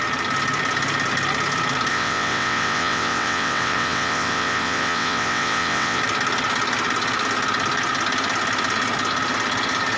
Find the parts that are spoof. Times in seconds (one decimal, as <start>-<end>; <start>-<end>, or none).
1.9-6.0